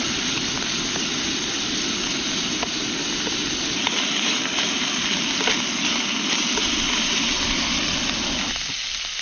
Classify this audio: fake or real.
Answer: real